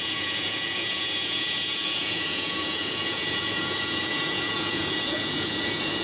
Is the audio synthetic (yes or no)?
yes